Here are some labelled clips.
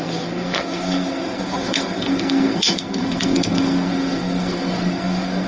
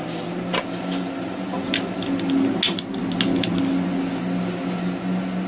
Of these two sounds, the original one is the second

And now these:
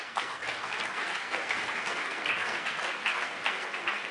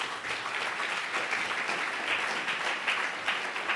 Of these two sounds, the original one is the second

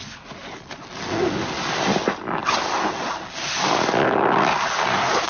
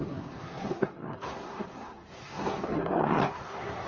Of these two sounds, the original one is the first